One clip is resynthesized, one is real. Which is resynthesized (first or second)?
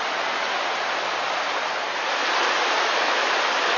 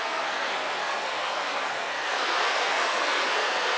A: second